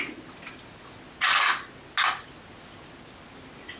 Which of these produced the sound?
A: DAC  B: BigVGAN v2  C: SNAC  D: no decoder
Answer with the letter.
D